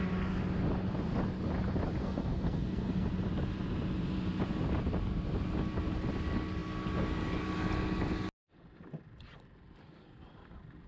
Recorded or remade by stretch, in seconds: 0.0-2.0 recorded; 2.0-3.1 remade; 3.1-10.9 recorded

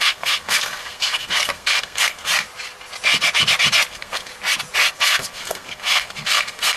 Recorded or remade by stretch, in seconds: 0.0-2.3 remade; 2.3-3.9 recorded; 3.9-4.3 remade; 4.3-4.9 recorded; 4.9-6.8 remade

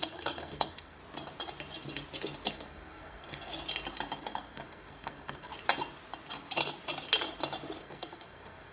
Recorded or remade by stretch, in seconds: 0.0-1.0 remade; 1.0-2.5 recorded; 2.5-3.5 remade; 3.5-4.2 recorded; 4.2-5.5 remade; 5.5-7.8 recorded; 7.8-8.7 remade

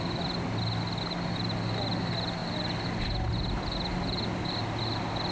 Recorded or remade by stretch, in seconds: 0.0-5.3 recorded

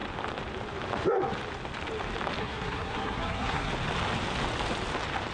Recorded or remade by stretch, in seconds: 0.0-2.4 recorded; 2.4-3.7 remade; 3.7-5.3 recorded

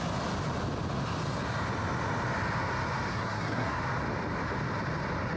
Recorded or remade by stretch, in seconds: 0.0-3.1 recorded; 3.1-3.8 remade; 3.8-5.4 recorded

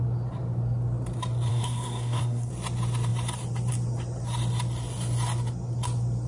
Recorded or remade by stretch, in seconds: 0.0-1.5 recorded; 1.5-2.5 remade; 2.5-6.3 recorded